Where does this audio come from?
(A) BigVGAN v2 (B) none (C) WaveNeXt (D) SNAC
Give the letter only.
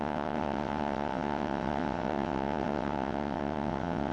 C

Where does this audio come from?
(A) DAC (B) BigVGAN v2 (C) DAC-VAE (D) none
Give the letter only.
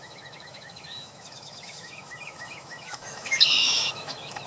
C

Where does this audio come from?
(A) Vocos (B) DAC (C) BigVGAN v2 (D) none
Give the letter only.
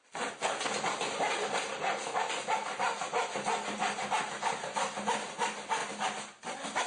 D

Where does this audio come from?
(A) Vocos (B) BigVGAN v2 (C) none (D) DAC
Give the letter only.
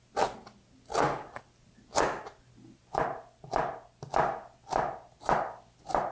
C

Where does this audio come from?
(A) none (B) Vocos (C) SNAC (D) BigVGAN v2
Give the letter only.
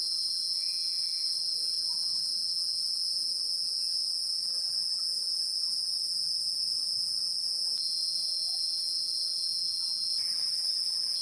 D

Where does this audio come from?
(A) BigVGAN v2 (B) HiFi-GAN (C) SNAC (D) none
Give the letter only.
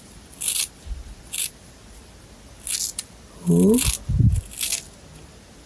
D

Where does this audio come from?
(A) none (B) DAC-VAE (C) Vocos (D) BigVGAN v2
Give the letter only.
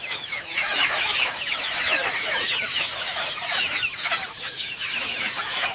B